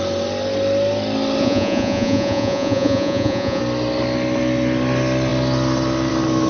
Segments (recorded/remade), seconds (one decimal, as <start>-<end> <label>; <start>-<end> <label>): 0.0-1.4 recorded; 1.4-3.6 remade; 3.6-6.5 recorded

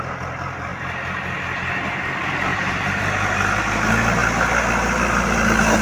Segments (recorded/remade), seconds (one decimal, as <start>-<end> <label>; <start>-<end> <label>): 0.0-2.5 recorded; 2.5-3.0 remade; 3.0-5.8 recorded

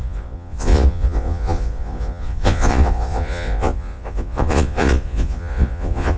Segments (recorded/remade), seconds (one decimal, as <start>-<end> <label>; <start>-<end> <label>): 0.0-6.2 remade